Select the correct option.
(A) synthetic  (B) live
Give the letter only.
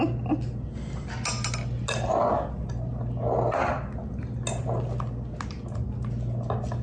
B